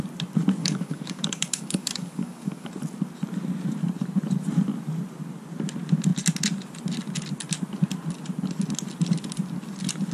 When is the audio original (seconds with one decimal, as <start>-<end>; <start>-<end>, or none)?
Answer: 0.0-0.6; 2.7-10.1